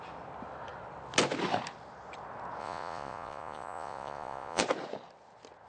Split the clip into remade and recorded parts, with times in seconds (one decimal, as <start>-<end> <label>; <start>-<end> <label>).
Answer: 0.0-2.6 recorded; 2.6-4.6 remade; 4.6-5.7 recorded